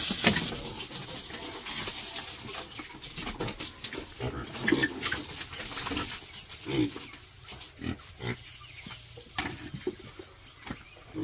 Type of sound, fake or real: real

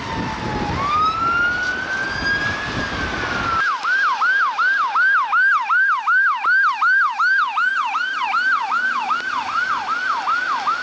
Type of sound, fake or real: real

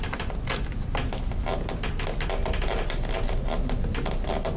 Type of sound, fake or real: real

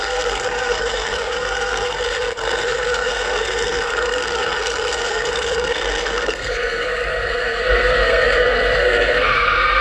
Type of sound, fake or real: fake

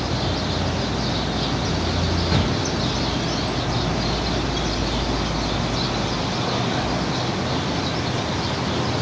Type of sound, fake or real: real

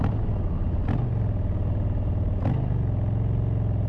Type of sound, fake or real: real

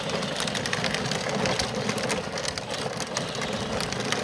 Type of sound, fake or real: real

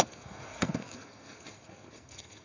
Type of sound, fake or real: fake